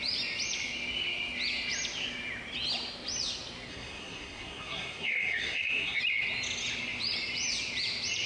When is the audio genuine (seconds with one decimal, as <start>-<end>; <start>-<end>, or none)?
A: 0.0-3.7; 6.0-8.3